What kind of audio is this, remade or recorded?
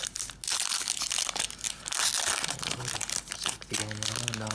recorded